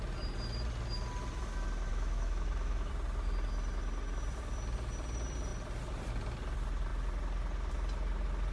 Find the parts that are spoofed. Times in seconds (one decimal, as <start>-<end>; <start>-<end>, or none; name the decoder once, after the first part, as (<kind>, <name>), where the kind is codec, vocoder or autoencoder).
1.9-2.9 (autoencoder, DAC-VAE)